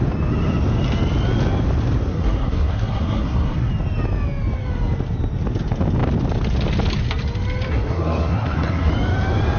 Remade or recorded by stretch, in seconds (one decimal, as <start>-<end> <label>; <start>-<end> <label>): 0.0-2.1 recorded; 2.1-3.7 remade; 3.7-7.7 recorded; 7.7-8.9 remade; 8.9-9.6 recorded